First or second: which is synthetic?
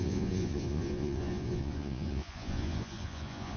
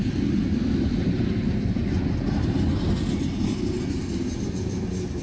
first